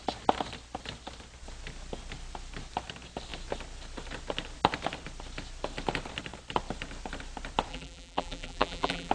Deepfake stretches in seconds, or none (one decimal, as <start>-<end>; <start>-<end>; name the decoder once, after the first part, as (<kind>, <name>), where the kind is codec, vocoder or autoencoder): 7.7-9.1 (vocoder, BigVGAN v2)